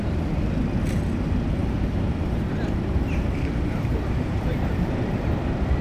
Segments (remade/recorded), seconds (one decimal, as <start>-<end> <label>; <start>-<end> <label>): 0.0-1.6 recorded; 1.6-4.9 remade; 4.9-5.8 recorded